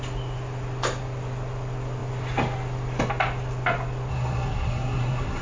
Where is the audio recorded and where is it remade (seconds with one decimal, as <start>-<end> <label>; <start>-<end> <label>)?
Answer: 0.0-4.1 recorded; 4.1-5.4 remade